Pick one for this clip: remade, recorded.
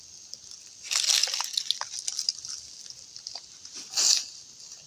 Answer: recorded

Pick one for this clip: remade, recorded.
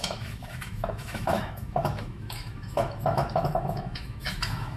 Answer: remade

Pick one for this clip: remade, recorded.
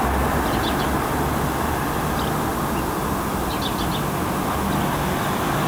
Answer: recorded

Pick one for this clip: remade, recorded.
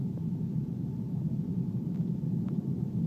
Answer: recorded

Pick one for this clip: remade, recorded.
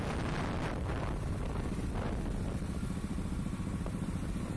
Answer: recorded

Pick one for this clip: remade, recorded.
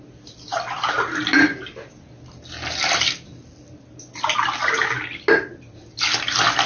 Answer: recorded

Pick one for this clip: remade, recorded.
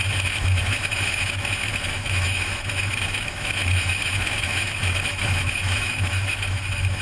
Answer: remade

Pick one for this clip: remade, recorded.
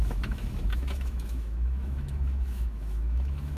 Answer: remade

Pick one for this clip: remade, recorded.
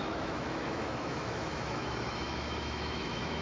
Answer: remade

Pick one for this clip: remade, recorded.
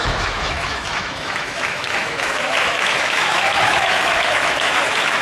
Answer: remade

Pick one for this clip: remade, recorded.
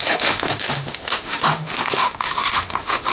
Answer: remade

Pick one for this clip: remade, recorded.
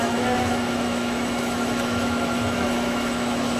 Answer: remade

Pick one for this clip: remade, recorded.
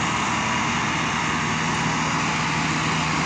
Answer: recorded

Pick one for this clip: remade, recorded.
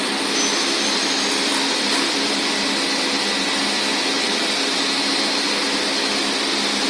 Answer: recorded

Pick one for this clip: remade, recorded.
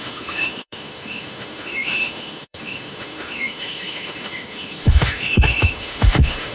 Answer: remade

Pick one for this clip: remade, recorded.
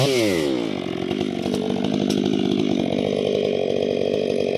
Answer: recorded